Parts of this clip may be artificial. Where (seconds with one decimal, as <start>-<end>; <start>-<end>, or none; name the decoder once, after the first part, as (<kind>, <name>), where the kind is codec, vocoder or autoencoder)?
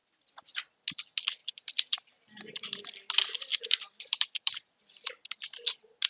1.4-2.8 (vocoder, BigVGAN v2); 3.5-4.8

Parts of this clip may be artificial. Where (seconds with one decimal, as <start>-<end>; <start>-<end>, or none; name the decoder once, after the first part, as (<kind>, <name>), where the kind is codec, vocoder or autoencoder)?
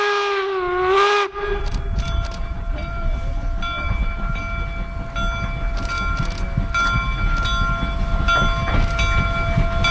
1.3-4.4 (vocoder, BigVGAN v2)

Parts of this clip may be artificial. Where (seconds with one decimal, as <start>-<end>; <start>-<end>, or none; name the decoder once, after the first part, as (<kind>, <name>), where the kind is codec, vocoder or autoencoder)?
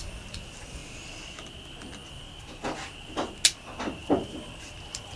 0.0-0.8 (vocoder, BigVGAN v2); 3.6-5.2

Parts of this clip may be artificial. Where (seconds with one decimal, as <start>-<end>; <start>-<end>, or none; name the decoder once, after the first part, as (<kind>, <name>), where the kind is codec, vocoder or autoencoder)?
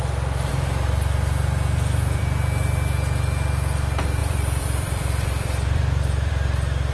4.2-6.3 (vocoder, BigVGAN v2)